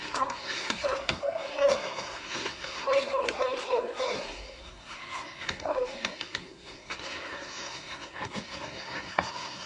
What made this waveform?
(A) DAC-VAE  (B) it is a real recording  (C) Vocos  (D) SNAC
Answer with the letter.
D